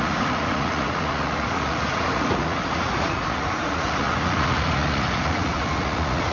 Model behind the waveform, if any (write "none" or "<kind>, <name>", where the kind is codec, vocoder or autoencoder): vocoder, Vocos